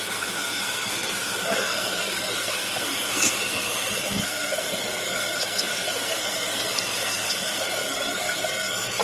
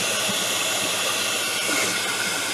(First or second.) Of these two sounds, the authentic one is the second